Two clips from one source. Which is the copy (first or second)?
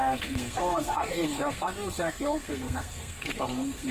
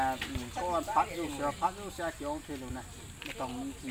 first